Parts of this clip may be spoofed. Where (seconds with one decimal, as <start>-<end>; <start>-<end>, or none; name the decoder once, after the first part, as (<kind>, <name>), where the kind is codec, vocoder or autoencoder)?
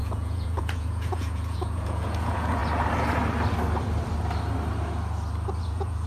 0.0-2.6 (vocoder, Vocos); 5.6-6.1